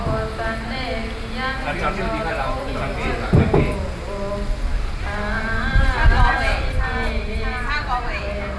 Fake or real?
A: real